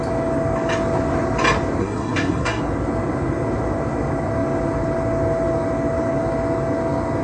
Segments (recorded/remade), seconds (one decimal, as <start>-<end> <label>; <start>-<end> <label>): 0.0-1.8 recorded; 1.8-2.6 remade; 2.6-7.2 recorded